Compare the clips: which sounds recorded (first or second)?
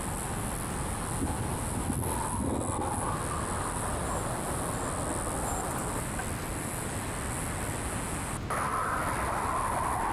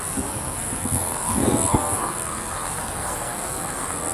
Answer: first